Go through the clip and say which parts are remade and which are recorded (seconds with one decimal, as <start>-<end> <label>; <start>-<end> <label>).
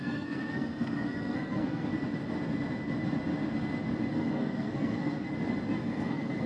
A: 0.0-1.9 remade; 1.9-4.1 recorded; 4.1-5.3 remade; 5.3-5.8 recorded; 5.8-6.5 remade